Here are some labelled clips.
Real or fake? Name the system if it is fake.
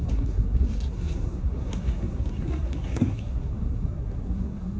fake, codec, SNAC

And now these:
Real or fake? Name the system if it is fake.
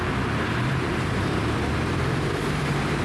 fake, vocoder, BigVGAN v2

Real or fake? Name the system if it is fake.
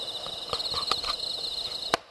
real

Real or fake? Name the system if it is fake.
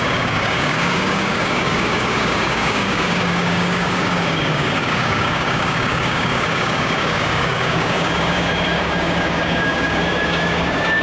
fake, codec, DAC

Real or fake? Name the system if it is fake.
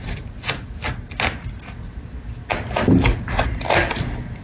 real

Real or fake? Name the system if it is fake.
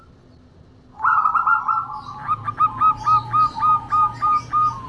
real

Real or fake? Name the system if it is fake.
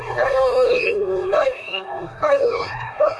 fake, codec, SNAC